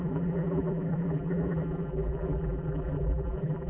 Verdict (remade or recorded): remade